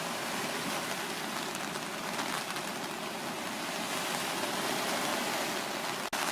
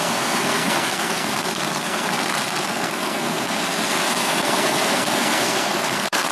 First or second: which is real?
first